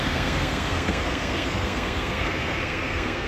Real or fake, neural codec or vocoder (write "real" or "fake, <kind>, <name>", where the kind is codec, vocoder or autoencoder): fake, codec, SNAC